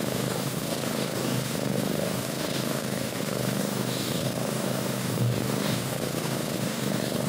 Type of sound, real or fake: fake